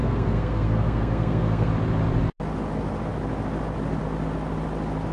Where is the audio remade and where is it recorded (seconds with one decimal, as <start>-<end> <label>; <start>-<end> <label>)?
0.0-1.7 remade; 1.7-5.1 recorded